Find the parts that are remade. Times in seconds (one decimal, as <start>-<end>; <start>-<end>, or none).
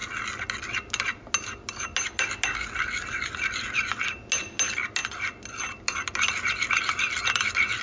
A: none